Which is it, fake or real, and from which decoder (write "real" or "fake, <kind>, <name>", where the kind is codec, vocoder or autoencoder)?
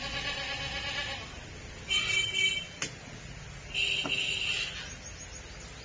real